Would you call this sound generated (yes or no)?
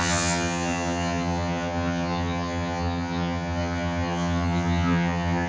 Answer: yes